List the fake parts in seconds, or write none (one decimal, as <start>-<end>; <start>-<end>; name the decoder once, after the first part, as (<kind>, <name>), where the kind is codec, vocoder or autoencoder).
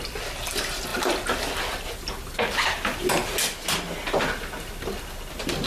none